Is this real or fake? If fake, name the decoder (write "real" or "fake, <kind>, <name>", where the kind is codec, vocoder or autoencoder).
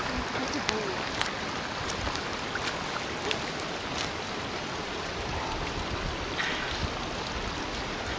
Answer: real